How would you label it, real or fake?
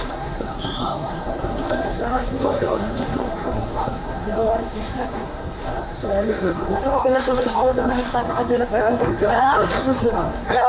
fake